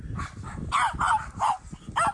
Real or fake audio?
real